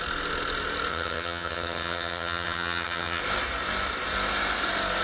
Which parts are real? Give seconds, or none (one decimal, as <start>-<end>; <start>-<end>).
0.0-0.9; 3.2-5.0